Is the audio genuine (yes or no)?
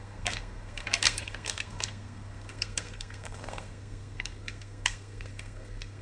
no